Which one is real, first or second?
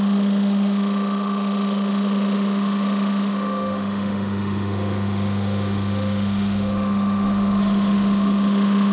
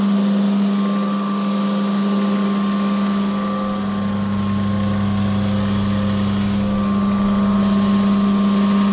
second